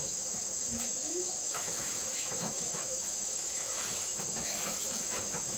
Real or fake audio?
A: fake